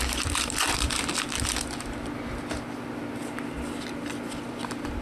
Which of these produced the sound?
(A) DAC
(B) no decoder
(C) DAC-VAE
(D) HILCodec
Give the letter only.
B